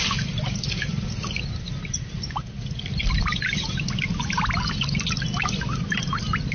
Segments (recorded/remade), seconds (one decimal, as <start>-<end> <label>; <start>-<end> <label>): 0.0-6.5 recorded

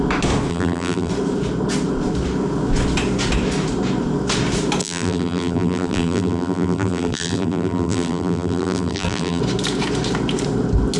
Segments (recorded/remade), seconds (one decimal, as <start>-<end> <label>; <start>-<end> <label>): 0.0-0.5 recorded; 0.5-1.1 remade; 1.1-4.8 recorded; 4.8-9.4 remade; 9.4-11.0 recorded

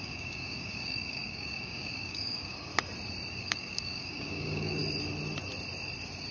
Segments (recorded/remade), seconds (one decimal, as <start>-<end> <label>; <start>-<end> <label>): 0.0-2.7 remade; 2.7-3.3 recorded; 3.3-4.8 remade; 4.8-6.3 recorded

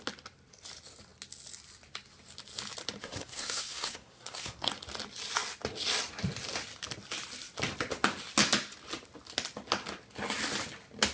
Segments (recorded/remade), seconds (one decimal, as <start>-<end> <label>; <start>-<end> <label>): 0.0-3.0 recorded; 3.0-4.7 remade; 4.7-11.1 recorded